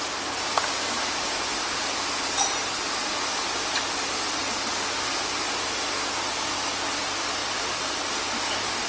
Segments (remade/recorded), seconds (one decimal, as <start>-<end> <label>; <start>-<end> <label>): 0.0-7.4 recorded; 7.4-8.1 remade; 8.1-8.9 recorded